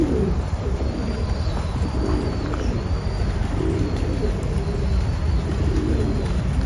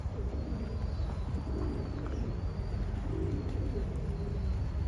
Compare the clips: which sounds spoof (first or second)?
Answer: first